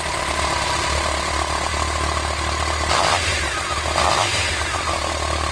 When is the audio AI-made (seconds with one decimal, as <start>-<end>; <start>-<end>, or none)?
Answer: none